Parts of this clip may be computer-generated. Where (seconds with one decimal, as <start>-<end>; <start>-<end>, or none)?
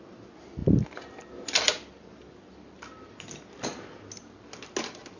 none